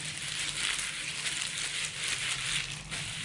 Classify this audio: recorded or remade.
recorded